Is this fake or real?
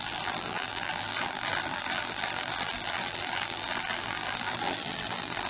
fake